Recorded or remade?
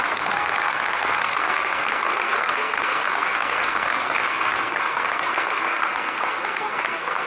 remade